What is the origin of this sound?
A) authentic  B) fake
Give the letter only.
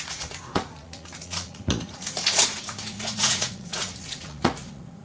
B